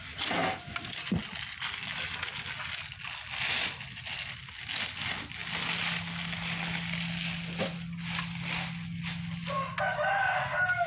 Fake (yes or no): no